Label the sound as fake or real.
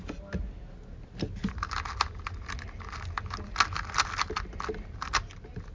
real